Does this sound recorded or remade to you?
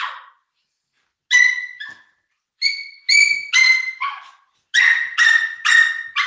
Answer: recorded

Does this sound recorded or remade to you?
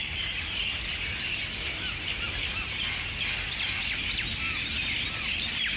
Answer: recorded